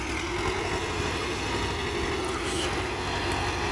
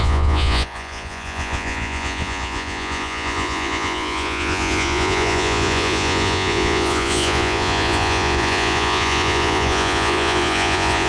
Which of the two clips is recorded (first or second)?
first